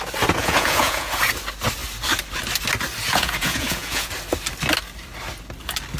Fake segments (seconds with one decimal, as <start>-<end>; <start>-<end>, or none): 0.4-1.1; 3.1-4.1